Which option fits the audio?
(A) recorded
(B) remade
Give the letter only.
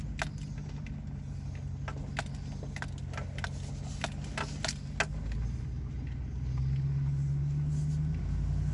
A